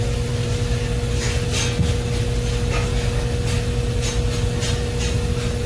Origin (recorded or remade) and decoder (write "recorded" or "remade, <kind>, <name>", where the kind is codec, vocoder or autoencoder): recorded